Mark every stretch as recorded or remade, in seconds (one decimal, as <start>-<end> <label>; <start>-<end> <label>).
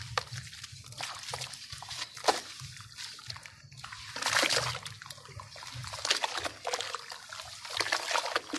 0.0-8.6 recorded